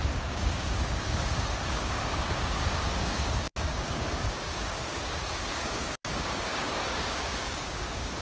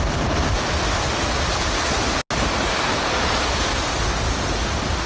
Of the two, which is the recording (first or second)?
second